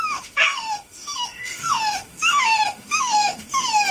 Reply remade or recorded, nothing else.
remade